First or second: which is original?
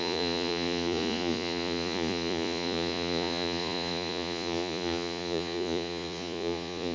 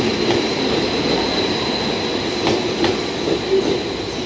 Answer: second